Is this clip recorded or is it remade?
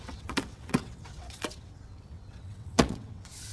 remade